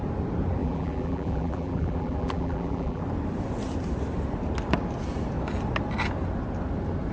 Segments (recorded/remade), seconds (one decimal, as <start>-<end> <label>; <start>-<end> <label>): 0.0-0.6 recorded; 0.6-3.0 remade; 3.0-7.1 recorded